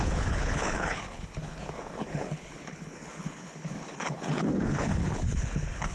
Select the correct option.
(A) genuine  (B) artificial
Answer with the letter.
B